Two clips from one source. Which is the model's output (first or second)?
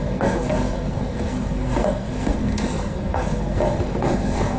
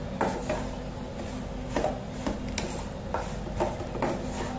first